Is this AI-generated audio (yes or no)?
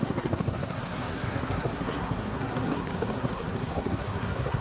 yes